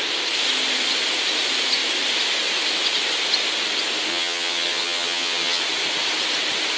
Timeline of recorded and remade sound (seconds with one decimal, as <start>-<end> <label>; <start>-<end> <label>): 0.0-4.1 recorded; 4.1-5.6 remade; 5.6-6.8 recorded